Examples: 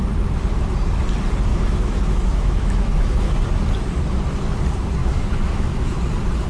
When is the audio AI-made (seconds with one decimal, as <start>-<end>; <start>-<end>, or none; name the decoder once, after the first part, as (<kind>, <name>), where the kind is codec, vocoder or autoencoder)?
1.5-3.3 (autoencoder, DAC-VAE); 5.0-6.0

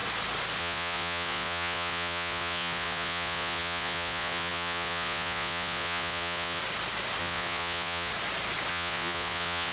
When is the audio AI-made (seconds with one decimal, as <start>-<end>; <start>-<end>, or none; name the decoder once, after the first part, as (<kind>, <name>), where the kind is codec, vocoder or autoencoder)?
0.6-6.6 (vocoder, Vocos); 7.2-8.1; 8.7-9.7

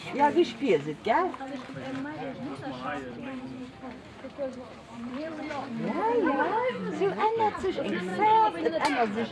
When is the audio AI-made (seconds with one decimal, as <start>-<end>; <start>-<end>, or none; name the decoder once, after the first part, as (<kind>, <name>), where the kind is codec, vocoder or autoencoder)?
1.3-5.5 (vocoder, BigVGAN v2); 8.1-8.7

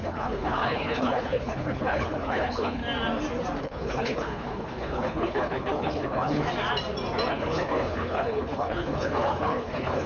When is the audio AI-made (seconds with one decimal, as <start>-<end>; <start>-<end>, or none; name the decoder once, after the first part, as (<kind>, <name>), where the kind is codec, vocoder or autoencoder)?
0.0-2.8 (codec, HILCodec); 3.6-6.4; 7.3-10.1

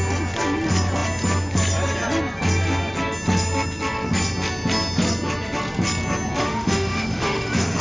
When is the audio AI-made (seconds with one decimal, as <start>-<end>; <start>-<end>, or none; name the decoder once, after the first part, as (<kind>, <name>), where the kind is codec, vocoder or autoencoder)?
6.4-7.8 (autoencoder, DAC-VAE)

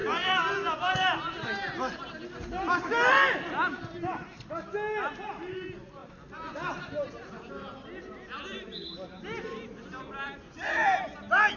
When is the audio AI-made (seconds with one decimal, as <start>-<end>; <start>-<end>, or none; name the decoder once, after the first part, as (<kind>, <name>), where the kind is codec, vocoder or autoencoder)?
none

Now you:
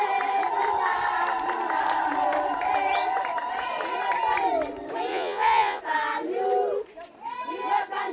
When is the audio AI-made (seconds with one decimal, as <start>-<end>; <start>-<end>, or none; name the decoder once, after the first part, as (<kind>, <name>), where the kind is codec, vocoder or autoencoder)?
5.1-5.8 (vocoder, Vocos)